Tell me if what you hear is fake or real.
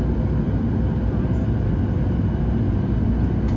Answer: real